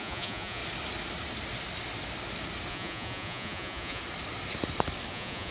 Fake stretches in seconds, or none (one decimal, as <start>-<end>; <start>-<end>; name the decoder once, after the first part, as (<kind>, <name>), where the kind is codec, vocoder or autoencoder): 0.0-0.6 (vocoder, Vocos); 2.7-4.0; 5.1-5.5